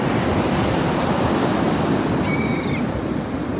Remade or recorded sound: recorded